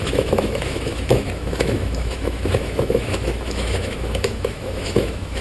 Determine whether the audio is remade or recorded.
remade